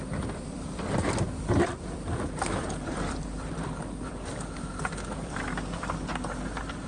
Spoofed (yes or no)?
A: yes